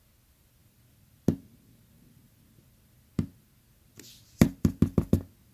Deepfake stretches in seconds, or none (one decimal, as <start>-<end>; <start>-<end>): none